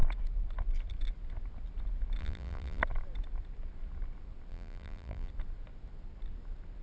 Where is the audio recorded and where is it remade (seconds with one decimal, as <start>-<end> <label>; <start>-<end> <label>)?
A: 0.0-2.2 recorded; 2.2-2.8 remade; 2.8-4.5 recorded; 4.5-5.3 remade; 5.3-6.8 recorded